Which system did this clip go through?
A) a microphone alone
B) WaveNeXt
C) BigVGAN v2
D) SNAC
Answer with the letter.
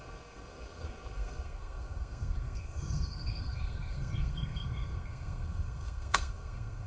D